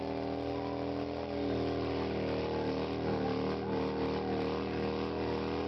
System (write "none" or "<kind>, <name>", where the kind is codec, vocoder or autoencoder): none